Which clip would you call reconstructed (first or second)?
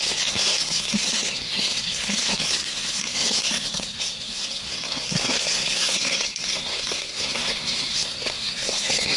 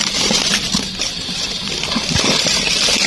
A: first